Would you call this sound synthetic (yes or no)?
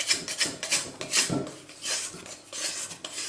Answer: no